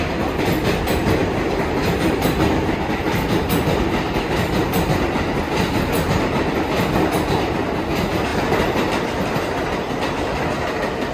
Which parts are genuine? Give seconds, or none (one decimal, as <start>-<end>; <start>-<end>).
0.0-1.2; 5.0-8.3; 9.9-11.1